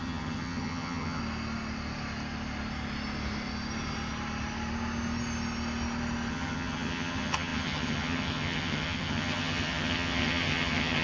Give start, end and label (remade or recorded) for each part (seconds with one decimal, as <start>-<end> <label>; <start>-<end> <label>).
0.0-1.2 remade; 1.2-6.3 recorded; 6.3-11.0 remade